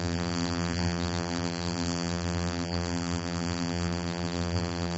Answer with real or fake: fake